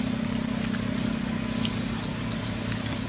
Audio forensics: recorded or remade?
recorded